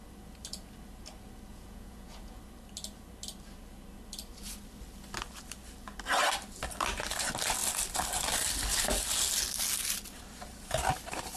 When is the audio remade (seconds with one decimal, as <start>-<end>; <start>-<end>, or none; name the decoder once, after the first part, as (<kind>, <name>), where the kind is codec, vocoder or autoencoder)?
1.5-2.4 (vocoder, Vocos)